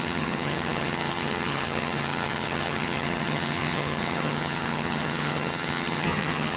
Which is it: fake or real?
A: fake